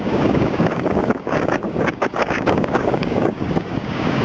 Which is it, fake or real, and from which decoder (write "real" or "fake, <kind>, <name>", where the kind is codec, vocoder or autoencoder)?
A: fake, codec, DAC